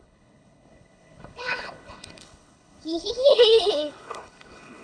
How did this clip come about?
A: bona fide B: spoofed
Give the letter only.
B